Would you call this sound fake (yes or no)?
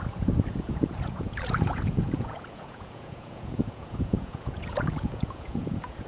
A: yes